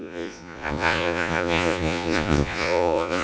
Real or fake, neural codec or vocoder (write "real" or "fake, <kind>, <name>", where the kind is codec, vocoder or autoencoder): fake, vocoder, Vocos